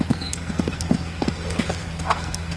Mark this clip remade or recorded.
remade